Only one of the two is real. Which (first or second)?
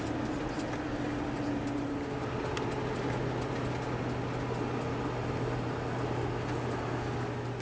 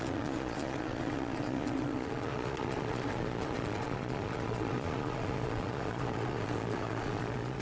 first